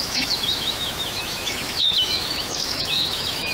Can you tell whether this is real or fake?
fake